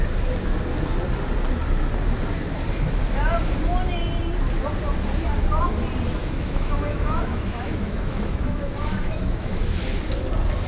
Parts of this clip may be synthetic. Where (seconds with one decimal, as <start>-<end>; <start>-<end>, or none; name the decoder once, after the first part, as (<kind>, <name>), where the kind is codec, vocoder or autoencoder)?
6.2-9.8 (autoencoder, DAC-VAE)